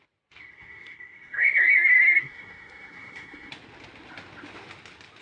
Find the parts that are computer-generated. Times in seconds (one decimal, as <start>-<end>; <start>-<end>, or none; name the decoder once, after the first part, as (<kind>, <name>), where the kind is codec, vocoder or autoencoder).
0.4-3.5 (codec, SNAC)